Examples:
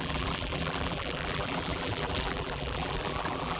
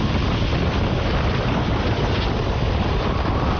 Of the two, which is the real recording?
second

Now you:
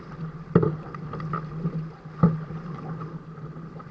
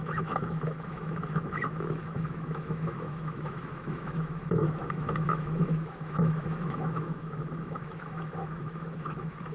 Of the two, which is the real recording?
first